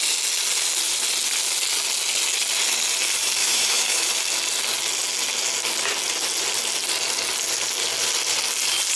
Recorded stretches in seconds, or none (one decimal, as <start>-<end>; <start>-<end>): 0.0-3.4; 4.1-9.0